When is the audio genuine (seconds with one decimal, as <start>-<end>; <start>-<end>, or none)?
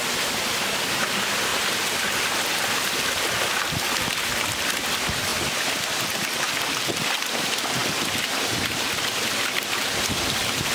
0.0-10.7